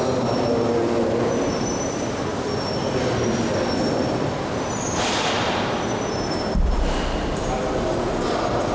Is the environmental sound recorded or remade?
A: recorded